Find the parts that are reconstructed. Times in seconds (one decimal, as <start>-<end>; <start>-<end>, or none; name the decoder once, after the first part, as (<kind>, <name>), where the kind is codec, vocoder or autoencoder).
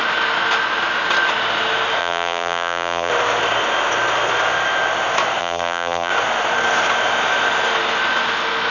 2.0-3.1 (vocoder, BigVGAN v2); 5.4-6.1